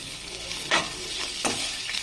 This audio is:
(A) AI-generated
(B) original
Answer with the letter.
A